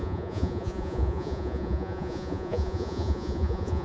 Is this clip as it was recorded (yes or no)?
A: no